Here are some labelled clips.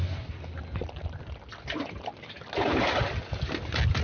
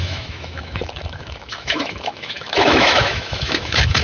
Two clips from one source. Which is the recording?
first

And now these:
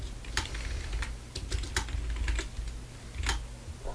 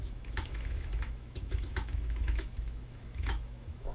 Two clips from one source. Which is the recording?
first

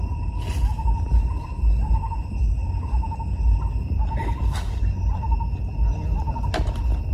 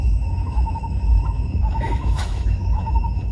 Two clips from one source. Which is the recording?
first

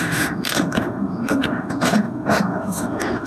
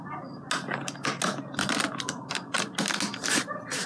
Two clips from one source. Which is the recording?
second